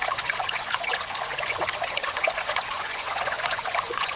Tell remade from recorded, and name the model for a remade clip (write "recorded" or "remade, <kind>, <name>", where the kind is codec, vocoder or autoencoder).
remade, vocoder, Vocos